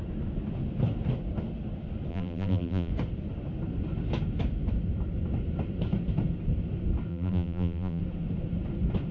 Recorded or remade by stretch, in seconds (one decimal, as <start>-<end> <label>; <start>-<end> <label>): 0.0-2.1 recorded; 2.1-2.9 remade; 2.9-7.1 recorded; 7.1-8.0 remade; 8.0-9.1 recorded